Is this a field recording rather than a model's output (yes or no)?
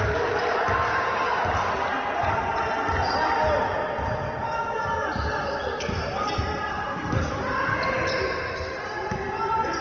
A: yes